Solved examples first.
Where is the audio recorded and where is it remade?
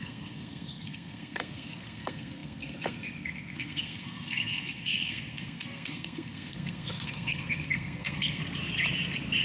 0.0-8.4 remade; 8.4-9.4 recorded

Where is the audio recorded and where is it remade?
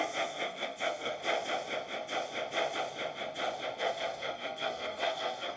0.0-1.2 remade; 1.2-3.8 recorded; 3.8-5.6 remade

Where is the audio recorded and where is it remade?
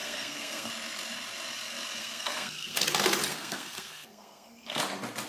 0.0-0.7 remade; 0.7-2.0 recorded; 2.0-2.8 remade; 2.8-3.3 recorded; 3.3-4.8 remade; 4.8-5.3 recorded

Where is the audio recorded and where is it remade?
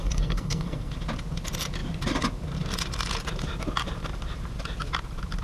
0.0-0.9 remade; 0.9-5.4 recorded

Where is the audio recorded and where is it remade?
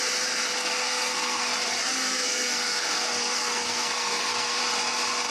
0.0-0.6 recorded; 0.6-1.5 remade; 1.5-1.9 recorded; 1.9-4.6 remade; 4.6-5.3 recorded